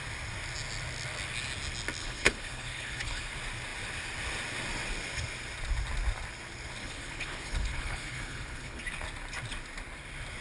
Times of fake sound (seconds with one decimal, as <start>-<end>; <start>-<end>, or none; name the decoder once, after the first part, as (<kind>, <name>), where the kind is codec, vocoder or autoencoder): 2.0-3.2 (codec, HILCodec); 6.8-8.8